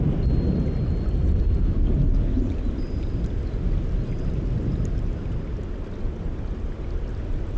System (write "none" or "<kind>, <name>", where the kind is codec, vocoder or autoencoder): none